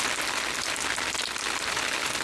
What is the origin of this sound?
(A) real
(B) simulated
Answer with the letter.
A